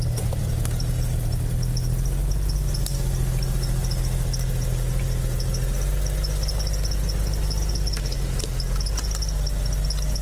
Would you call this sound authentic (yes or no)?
yes